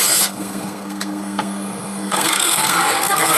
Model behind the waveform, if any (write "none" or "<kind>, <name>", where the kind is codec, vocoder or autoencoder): codec, SNAC